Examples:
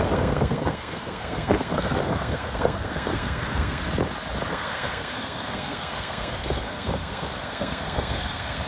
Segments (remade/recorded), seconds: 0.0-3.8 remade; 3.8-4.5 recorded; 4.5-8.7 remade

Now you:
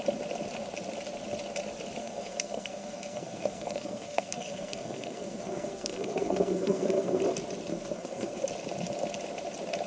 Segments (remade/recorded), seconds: 0.0-2.0 recorded; 2.0-7.2 remade; 7.2-7.7 recorded; 7.7-8.4 remade; 8.4-9.9 recorded

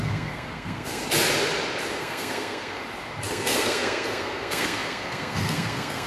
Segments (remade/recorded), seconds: 0.0-1.0 remade; 1.0-2.0 recorded; 2.0-2.8 remade; 2.8-3.3 recorded; 3.3-6.1 remade

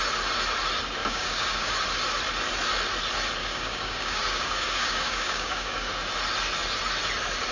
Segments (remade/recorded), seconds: 0.0-1.0 recorded; 1.0-1.7 remade; 1.7-3.4 recorded; 3.4-5.9 remade; 5.9-7.5 recorded

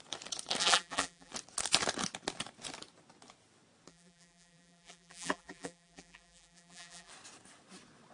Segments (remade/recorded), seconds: 0.0-0.6 recorded; 0.6-1.3 remade; 1.3-3.9 recorded; 3.9-7.1 remade; 7.1-8.1 recorded

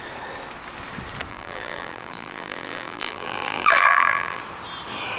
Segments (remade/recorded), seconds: 0.0-1.3 recorded; 1.3-4.4 remade; 4.4-5.2 recorded

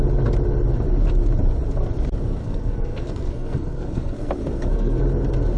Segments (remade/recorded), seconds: 0.0-2.4 recorded; 2.4-5.0 remade; 5.0-5.6 recorded

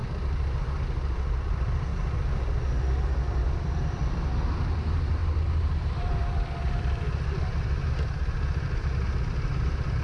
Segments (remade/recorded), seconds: 0.0-1.5 recorded; 1.5-1.9 remade; 1.9-2.9 recorded; 2.9-10.0 remade